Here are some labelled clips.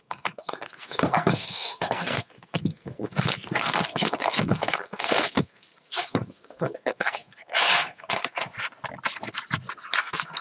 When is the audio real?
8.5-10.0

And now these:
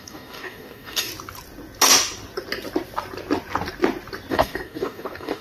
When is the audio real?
1.1-4.3

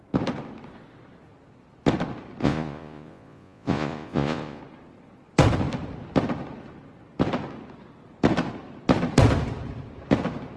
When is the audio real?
0.0-2.4; 4.6-10.6

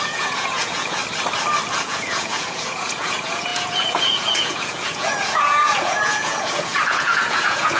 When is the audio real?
1.0-1.7